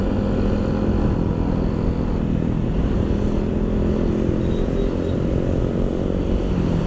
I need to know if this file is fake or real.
real